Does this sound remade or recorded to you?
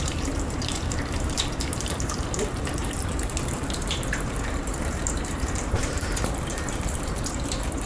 remade